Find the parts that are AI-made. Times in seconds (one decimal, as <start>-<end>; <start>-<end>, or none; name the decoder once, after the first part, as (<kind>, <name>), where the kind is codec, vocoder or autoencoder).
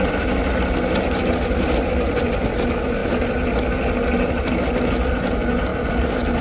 none